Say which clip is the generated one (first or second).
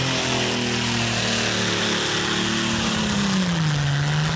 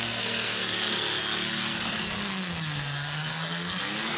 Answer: second